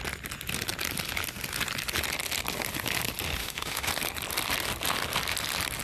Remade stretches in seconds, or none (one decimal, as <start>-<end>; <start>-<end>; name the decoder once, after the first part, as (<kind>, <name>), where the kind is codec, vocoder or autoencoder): 3.4-3.9 (autoencoder, DAC-VAE)